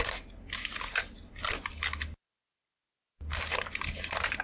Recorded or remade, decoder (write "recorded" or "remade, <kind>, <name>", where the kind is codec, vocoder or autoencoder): recorded